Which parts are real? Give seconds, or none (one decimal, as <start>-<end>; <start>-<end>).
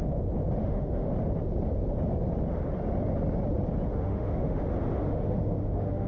0.0-0.6; 1.1-3.9; 4.6-5.0